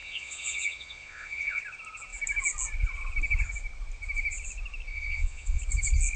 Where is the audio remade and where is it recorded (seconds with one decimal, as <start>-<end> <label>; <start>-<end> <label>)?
0.0-1.6 remade; 1.6-4.9 recorded; 4.9-5.6 remade; 5.6-6.2 recorded